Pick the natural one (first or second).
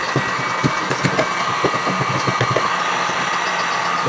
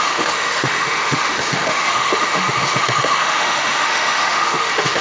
first